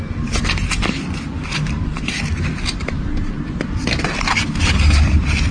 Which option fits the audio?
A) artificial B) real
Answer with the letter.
A